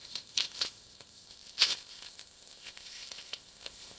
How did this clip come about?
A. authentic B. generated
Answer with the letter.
B